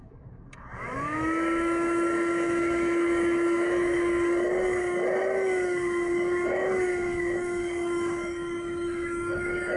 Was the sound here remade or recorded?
remade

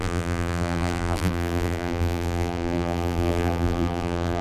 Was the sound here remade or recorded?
remade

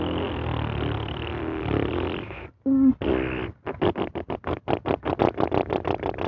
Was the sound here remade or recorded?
recorded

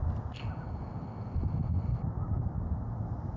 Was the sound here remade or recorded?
recorded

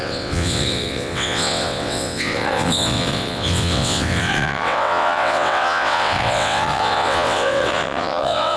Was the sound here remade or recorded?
remade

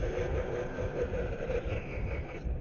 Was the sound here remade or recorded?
remade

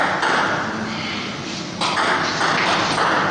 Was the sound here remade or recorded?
recorded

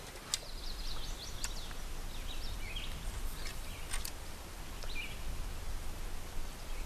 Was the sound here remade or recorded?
recorded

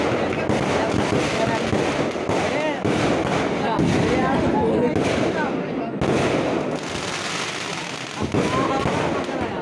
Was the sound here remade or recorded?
recorded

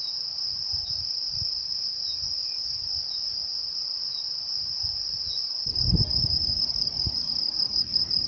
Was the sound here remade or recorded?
remade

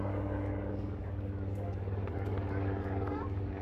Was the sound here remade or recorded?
remade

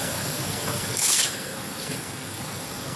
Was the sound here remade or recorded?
remade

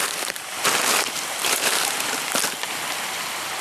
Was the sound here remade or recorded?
recorded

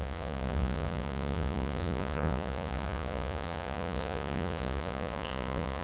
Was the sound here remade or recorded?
remade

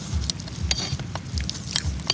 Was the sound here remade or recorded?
recorded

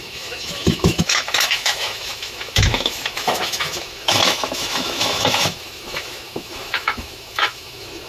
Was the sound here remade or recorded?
remade